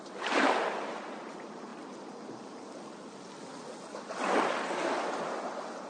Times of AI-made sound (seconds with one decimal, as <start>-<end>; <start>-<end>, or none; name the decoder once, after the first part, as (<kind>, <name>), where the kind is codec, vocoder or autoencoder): none